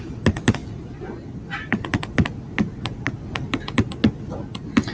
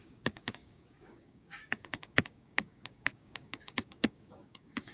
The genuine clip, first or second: first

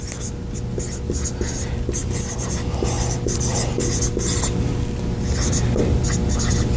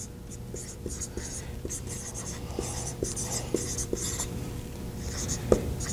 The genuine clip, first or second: first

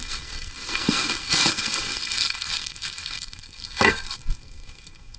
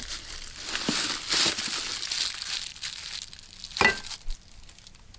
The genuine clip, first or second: second